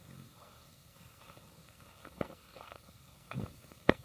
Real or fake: fake